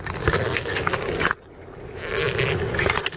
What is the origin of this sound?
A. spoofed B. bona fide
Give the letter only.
B